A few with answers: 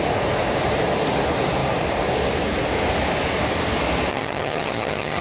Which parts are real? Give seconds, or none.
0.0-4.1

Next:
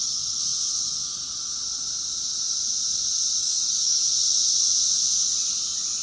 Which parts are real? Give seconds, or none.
0.0-3.4; 4.1-6.0

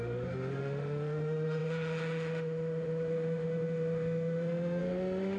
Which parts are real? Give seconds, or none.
none

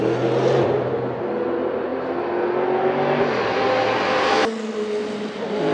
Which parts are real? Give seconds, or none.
0.0-5.7

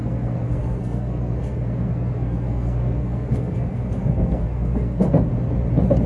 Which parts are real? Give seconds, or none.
5.3-6.1

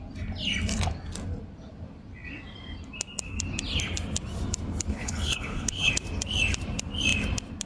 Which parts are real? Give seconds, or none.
0.0-4.9; 5.9-7.7

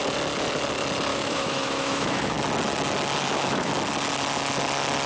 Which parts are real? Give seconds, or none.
0.0-1.1; 2.4-3.2; 3.7-5.1

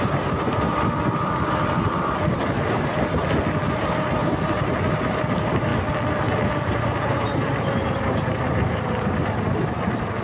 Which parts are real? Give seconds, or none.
3.2-3.7; 5.7-6.6